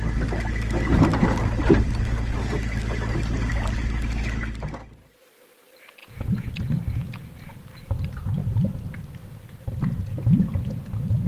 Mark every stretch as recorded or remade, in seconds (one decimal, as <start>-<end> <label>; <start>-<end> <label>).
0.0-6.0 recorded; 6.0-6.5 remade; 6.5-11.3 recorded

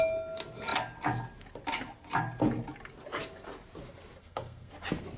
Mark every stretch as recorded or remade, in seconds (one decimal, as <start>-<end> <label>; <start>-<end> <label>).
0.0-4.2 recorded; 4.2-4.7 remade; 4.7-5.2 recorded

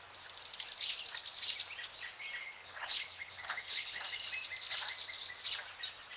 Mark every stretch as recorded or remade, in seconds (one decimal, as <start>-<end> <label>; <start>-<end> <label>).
0.0-2.4 recorded; 2.4-4.0 remade; 4.0-6.2 recorded

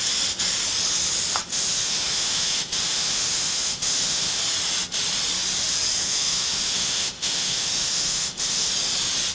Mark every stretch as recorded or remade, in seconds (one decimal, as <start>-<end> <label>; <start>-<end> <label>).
0.0-1.5 recorded; 1.5-4.4 remade; 4.4-6.0 recorded; 6.0-8.7 remade; 8.7-9.3 recorded

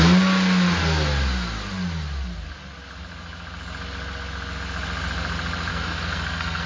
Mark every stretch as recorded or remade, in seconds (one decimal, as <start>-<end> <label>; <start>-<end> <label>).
0.0-5.7 recorded; 5.7-6.7 remade

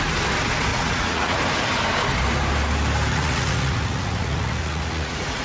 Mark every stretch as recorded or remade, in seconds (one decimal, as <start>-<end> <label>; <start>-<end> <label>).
0.0-0.7 recorded; 0.7-1.4 remade; 1.4-3.1 recorded; 3.1-5.4 remade

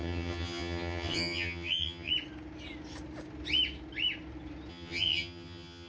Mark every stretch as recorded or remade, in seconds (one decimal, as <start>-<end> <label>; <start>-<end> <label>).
0.0-2.1 remade; 2.1-4.7 recorded; 4.7-5.9 remade

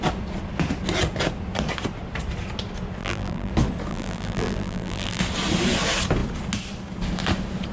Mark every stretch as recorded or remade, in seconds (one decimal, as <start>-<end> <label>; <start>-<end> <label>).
0.0-3.0 recorded; 3.0-3.5 remade; 3.5-3.9 recorded; 3.9-5.2 remade; 5.2-7.7 recorded